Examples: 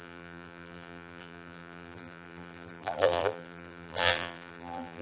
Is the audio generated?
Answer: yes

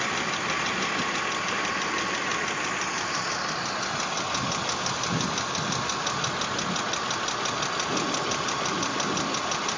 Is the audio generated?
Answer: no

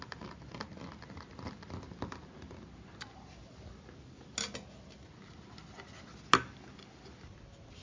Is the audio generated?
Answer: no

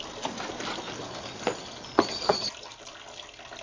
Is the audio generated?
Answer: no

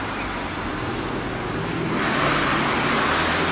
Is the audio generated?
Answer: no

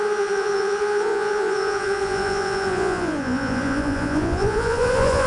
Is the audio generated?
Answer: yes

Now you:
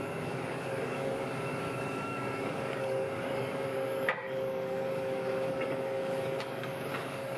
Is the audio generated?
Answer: yes